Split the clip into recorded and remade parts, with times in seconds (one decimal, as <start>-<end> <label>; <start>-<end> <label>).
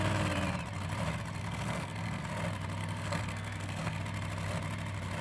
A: 0.0-1.4 recorded; 1.4-2.2 remade; 2.2-2.8 recorded; 2.8-4.0 remade; 4.0-5.2 recorded